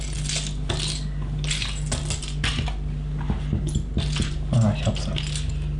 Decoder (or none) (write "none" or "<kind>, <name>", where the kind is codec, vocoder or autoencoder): none